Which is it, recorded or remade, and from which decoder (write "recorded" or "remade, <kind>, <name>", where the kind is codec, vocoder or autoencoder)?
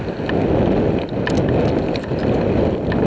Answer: recorded